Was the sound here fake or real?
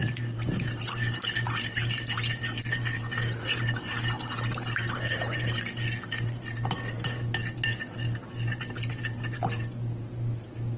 real